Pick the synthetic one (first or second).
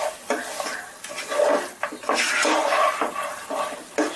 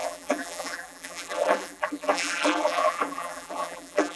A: second